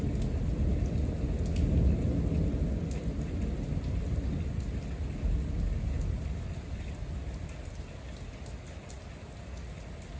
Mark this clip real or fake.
real